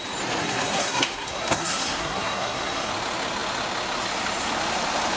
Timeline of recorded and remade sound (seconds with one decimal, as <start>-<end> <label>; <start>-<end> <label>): 0.0-0.4 recorded; 0.4-2.9 remade; 2.9-5.2 recorded